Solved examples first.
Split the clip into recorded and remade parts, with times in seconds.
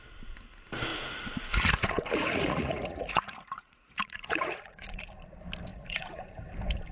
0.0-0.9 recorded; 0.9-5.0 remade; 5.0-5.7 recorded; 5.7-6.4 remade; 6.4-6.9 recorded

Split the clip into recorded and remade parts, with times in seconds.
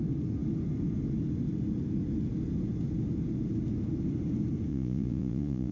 0.0-4.7 recorded; 4.7-5.7 remade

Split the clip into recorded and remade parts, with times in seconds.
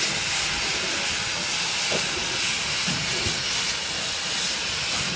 0.0-5.2 recorded